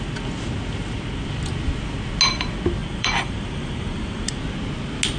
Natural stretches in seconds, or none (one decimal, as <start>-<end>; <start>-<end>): 0.0-2.8; 4.4-5.2